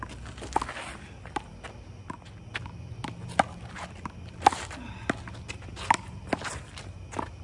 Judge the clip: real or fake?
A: real